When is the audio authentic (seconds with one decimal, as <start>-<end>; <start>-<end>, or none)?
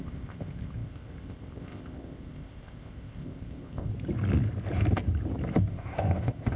3.9-5.7